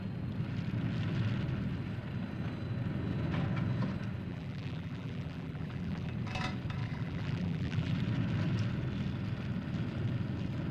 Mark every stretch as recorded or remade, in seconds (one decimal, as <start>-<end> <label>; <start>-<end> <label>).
0.0-4.3 recorded; 4.3-6.1 remade; 6.1-6.8 recorded; 6.8-7.9 remade; 7.9-10.7 recorded